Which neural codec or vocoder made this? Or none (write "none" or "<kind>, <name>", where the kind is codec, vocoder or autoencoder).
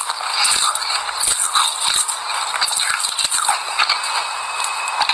none